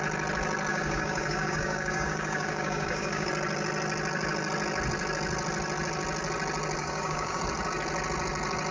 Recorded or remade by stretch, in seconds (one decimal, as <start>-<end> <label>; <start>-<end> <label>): 0.0-0.7 recorded; 0.7-3.3 remade; 3.3-6.8 recorded; 6.8-7.4 remade; 7.4-8.7 recorded